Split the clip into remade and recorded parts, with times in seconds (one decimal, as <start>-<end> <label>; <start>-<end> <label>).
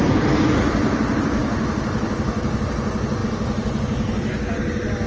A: 0.0-5.1 recorded